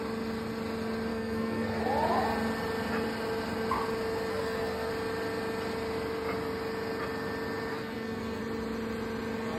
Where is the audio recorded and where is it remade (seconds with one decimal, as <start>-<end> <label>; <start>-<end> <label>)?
0.0-1.1 recorded; 1.1-1.8 remade; 1.8-4.3 recorded; 4.3-4.9 remade; 4.9-7.7 recorded; 7.7-8.4 remade; 8.4-9.6 recorded